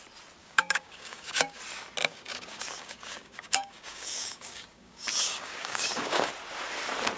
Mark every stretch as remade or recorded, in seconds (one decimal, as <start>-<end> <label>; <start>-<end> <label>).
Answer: 0.0-0.4 recorded; 0.4-1.6 remade; 1.6-2.0 recorded; 2.0-6.3 remade; 6.3-7.2 recorded